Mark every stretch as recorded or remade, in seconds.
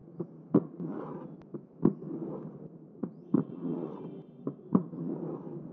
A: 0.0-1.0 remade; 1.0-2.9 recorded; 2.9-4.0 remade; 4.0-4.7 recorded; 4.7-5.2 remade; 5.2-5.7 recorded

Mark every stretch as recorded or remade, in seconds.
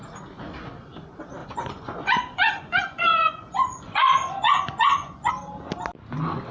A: 0.0-1.4 recorded; 1.4-5.3 remade; 5.3-6.5 recorded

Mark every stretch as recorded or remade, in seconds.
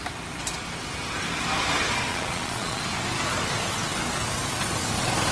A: 0.0-2.1 recorded; 2.1-2.8 remade; 2.8-5.3 recorded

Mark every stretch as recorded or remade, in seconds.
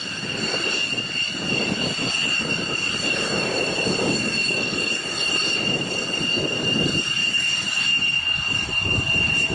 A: 0.0-9.5 recorded